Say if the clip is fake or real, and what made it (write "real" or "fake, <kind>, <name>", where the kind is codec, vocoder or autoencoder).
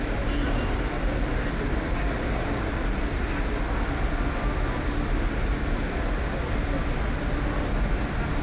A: real